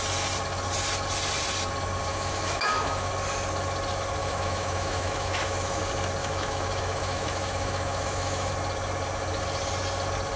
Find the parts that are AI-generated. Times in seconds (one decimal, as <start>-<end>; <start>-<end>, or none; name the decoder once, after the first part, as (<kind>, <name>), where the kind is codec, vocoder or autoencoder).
2.1-3.1 (autoencoder, DAC-VAE); 4.2-5.8; 6.2-8.5